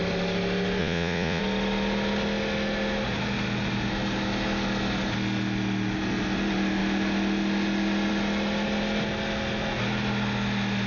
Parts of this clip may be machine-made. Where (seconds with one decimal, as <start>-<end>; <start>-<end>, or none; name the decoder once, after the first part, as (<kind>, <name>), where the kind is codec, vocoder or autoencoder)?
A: 0.8-1.4 (vocoder, Vocos)